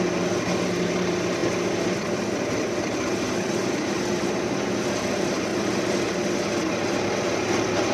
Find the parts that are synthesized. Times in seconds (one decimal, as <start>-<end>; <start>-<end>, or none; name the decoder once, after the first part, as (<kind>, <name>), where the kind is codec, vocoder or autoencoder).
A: 1.4-4.0 (vocoder, BigVGAN v2)